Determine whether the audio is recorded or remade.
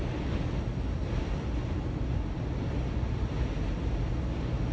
recorded